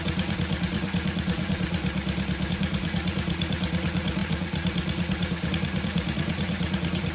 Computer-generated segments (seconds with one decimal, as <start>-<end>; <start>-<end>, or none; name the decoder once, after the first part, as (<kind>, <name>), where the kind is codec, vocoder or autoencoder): 0.0-1.8 (vocoder, Vocos); 2.5-7.1